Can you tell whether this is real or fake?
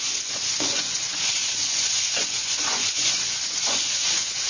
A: fake